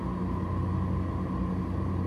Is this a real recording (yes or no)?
yes